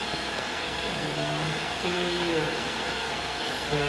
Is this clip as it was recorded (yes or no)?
no